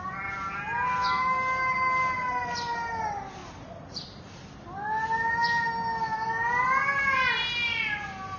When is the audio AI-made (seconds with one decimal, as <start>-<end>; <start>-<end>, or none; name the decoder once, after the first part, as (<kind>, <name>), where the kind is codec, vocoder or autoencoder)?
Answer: none